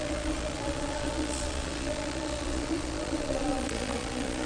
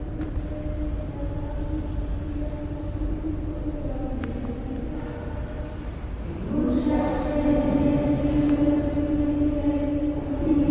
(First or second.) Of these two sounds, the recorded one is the second